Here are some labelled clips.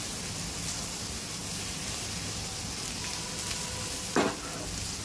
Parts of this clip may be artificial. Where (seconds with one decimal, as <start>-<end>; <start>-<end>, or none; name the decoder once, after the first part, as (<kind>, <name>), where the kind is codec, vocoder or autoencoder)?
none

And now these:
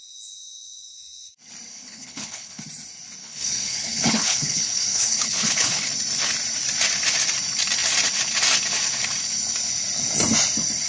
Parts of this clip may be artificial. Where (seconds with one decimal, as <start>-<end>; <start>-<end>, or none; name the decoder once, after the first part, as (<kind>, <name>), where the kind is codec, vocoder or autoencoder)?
1.7-2.6 (codec, HILCodec); 3.2-5.9

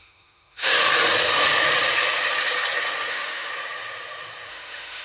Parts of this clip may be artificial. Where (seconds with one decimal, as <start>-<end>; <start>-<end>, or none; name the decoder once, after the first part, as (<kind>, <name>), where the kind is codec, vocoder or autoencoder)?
0.0-0.7 (autoencoder, DAC-VAE); 3.1-3.5; 4.5-5.0